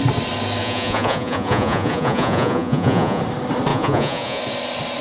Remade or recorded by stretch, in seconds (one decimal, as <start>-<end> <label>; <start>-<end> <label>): 0.0-0.6 recorded; 0.6-3.2 remade; 3.2-3.7 recorded; 3.7-4.4 remade; 4.4-5.0 recorded